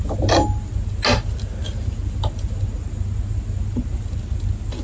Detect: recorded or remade recorded